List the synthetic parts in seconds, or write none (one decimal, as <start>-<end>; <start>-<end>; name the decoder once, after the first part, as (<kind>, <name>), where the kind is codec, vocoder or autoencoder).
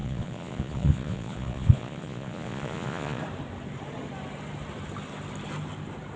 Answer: 0.0-3.2 (vocoder, Vocos)